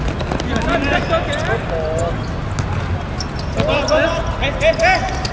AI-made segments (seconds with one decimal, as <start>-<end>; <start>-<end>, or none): none